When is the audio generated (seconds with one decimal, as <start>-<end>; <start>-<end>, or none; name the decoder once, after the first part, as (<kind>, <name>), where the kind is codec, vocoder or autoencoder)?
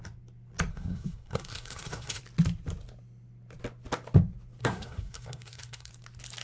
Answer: 0.7-2.2 (codec, SNAC); 4.6-5.9